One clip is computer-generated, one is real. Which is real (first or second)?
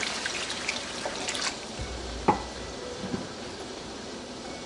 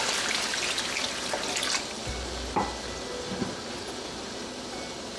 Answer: second